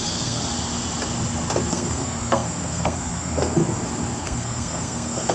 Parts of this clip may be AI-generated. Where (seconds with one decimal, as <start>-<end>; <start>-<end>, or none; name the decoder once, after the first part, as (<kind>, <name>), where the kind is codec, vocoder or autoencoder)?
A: 0.0-0.4 (codec, SNAC); 1.7-3.6; 4.2-5.3